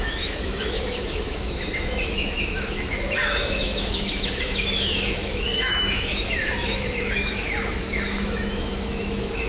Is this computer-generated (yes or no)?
yes